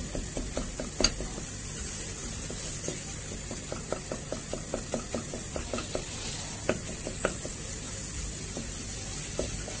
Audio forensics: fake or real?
real